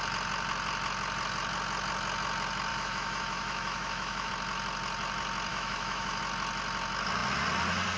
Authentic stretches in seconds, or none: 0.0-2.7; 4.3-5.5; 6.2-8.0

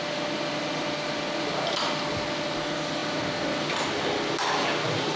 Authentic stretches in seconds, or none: 0.0-5.2